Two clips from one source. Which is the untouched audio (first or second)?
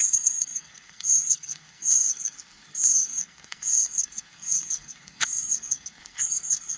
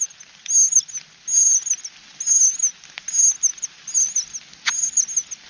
second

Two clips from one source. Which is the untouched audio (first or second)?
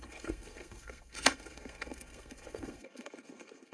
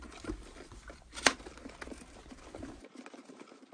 second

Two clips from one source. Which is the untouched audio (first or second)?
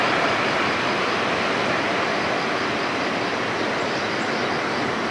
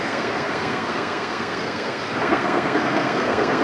first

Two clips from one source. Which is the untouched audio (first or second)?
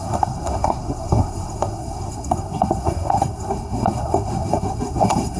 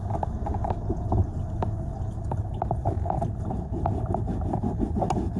second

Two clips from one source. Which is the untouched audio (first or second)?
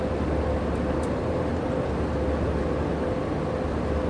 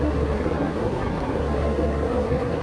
first